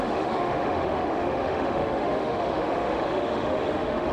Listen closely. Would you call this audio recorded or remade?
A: remade